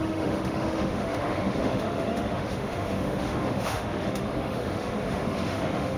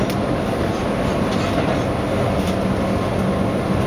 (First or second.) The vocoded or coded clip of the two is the first